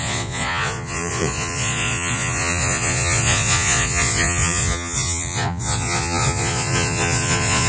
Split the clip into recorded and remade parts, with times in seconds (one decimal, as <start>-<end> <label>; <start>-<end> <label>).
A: 0.0-7.7 remade